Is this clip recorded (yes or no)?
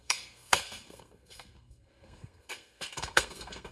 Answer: no